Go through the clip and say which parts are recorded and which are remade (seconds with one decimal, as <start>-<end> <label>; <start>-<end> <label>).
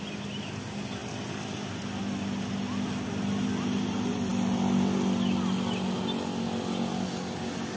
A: 0.0-7.8 recorded